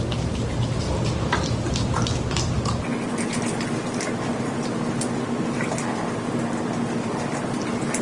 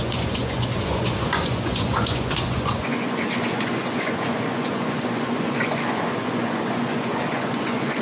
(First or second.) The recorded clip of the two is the first